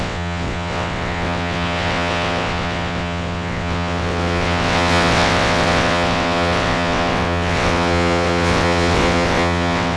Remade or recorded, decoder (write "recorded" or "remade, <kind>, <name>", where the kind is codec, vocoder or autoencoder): remade, vocoder, WaveNeXt